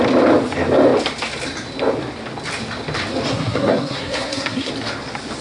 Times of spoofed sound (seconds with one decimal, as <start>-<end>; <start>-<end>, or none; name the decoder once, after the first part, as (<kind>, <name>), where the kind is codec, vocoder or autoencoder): 3.3-4.7 (codec, SNAC)